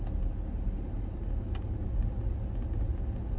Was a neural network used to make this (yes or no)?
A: no